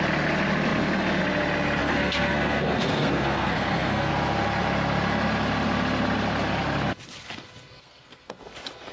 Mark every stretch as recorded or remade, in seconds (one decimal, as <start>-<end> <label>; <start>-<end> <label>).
0.0-1.8 recorded; 1.8-4.1 remade; 4.1-7.8 recorded; 7.8-8.4 remade; 8.4-8.9 recorded